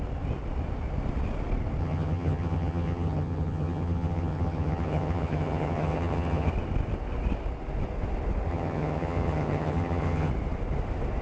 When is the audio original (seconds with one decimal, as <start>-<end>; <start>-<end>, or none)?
0.0-1.8; 6.5-8.5; 10.3-11.2